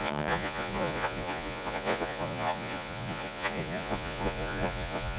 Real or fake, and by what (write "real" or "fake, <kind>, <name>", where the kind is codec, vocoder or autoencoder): fake, vocoder, Vocos